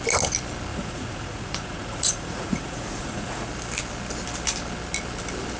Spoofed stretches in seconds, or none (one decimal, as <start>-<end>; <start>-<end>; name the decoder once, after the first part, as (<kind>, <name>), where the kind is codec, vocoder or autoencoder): 0.7-3.5 (vocoder, Vocos)